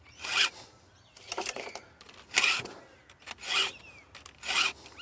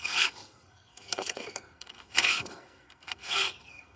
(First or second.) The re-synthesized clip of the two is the second